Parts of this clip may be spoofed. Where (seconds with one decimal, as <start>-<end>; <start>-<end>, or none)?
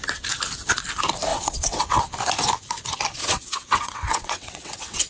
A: 1.3-2.0; 3.1-5.1